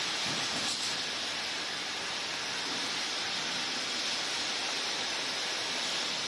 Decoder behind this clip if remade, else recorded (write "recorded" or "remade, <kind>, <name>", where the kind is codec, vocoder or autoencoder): recorded